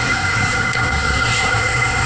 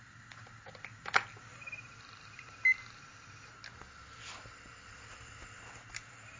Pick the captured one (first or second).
second